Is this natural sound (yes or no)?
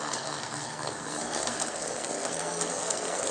no